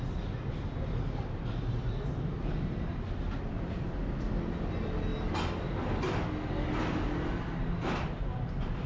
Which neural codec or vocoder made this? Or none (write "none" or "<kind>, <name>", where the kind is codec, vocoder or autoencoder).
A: none